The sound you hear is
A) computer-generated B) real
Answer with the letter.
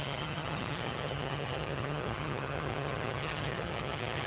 A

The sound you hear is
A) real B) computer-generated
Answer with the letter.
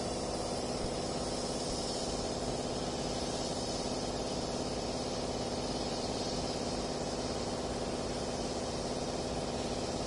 B